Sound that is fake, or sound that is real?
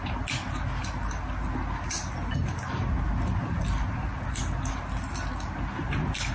real